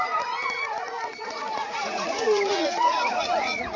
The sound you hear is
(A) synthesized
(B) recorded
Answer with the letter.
A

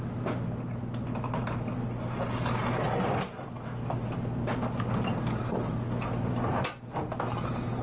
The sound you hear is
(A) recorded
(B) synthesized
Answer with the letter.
A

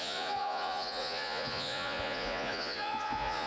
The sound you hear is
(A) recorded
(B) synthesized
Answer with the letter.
B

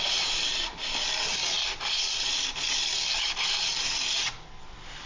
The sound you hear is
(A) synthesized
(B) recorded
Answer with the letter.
B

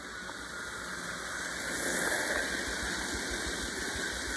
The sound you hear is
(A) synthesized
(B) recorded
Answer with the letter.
B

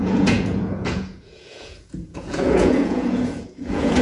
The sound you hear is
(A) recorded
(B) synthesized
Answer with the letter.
B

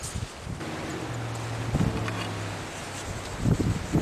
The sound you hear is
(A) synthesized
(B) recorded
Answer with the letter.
B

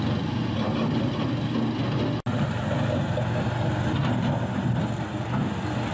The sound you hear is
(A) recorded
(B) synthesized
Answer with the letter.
A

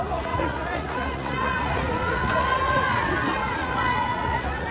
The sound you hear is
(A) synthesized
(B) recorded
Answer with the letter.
A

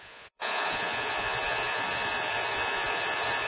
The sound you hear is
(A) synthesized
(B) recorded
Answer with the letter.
A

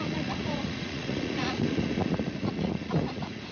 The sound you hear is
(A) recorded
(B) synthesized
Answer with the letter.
B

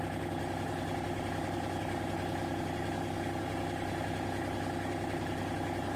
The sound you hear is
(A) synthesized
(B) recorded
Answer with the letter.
B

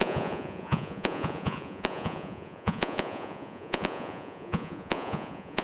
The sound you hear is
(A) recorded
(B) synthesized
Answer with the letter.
B